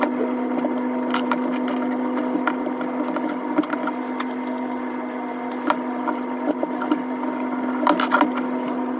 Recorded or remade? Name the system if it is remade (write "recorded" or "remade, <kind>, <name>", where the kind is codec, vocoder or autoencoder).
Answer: recorded